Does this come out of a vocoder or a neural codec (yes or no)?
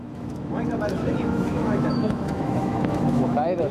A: yes